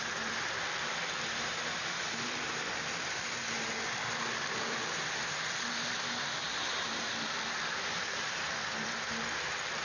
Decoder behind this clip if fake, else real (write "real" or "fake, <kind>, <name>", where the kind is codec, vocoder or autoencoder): fake, vocoder, BigVGAN v2